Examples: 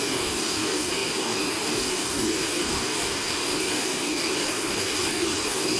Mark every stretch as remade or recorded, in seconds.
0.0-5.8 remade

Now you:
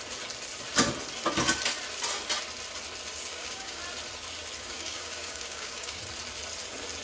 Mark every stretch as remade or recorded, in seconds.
0.0-3.3 recorded; 3.3-3.8 remade; 3.8-4.6 recorded; 4.6-6.0 remade; 6.0-7.0 recorded

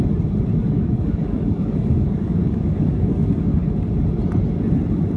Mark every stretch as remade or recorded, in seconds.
0.0-0.6 recorded; 0.6-3.6 remade; 3.6-5.2 recorded

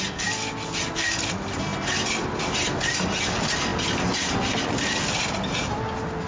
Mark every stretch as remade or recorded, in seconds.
0.0-6.3 recorded

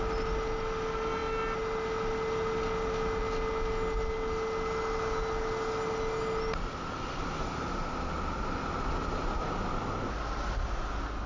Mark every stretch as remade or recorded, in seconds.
0.0-11.3 recorded

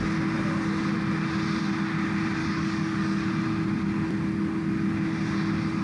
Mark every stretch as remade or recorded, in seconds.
0.0-2.4 recorded; 2.4-3.3 remade; 3.3-5.8 recorded

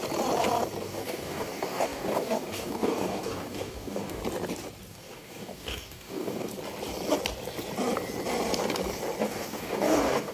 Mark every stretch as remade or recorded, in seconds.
0.0-0.8 recorded; 0.8-4.2 remade; 4.2-4.9 recorded; 4.9-6.5 remade; 6.5-9.2 recorded; 9.2-10.3 remade